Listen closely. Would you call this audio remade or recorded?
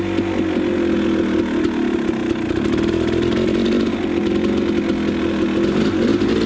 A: recorded